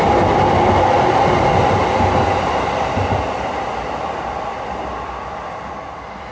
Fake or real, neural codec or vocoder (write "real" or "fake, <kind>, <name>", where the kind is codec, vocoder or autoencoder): real